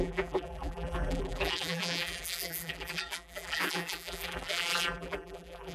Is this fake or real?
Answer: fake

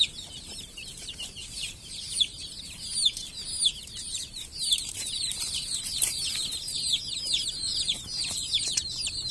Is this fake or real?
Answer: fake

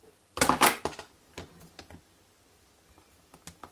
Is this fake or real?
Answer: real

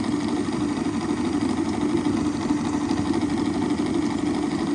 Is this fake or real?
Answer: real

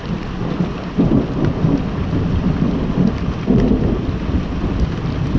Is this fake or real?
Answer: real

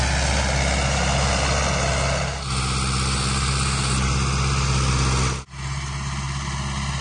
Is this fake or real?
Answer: real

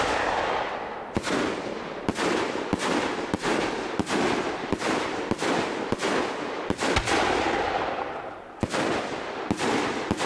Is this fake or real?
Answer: real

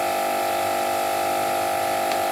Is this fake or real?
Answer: real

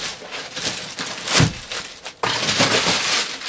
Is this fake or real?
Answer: real